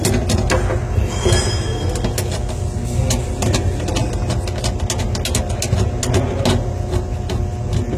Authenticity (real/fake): real